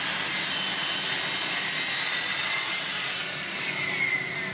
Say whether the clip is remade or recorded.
recorded